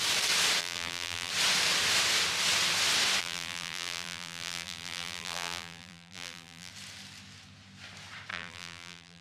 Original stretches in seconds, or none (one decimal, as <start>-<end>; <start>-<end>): 0.0-0.6; 1.3-3.2; 6.7-8.3